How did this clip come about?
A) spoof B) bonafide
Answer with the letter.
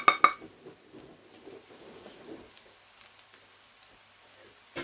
B